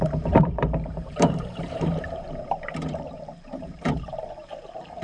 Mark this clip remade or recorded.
remade